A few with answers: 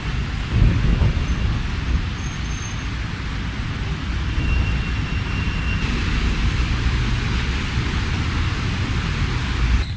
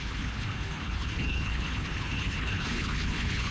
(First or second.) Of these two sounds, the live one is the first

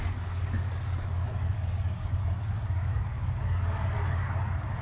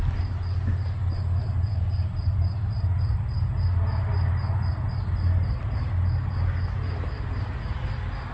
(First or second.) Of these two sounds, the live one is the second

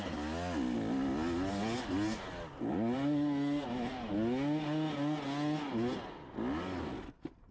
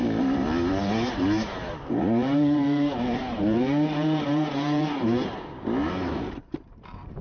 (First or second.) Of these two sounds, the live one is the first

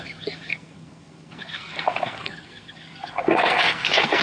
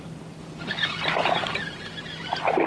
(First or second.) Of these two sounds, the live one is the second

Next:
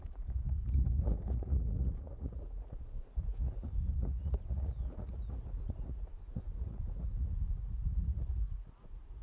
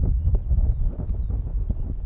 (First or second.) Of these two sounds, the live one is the second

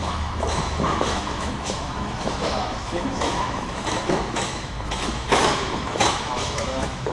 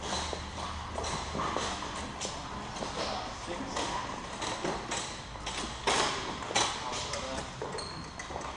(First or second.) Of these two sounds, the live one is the second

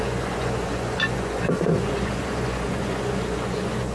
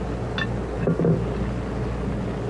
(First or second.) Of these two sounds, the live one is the second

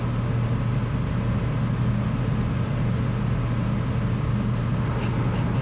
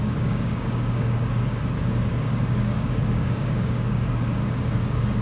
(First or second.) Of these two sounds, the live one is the first